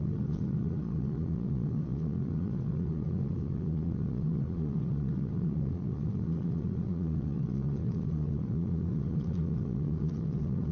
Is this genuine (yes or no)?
no